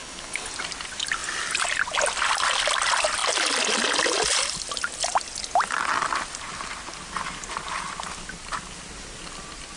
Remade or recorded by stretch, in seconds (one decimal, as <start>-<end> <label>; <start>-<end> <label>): 0.0-0.5 remade; 0.5-9.8 recorded